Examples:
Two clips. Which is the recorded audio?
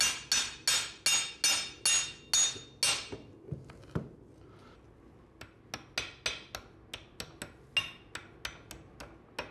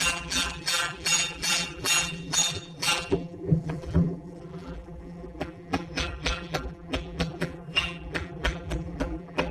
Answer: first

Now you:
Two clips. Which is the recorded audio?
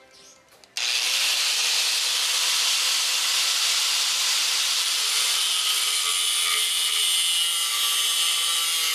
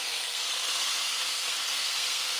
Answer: first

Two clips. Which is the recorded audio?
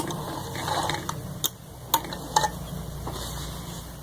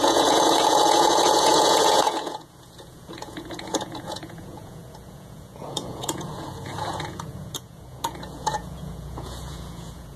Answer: first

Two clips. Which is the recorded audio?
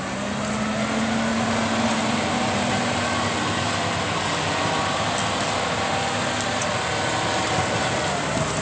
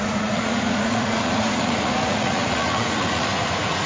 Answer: first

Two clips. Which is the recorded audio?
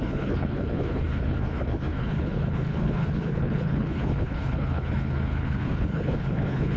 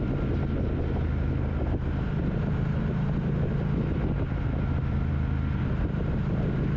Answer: second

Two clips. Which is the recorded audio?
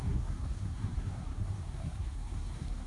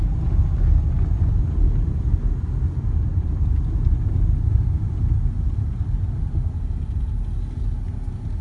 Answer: second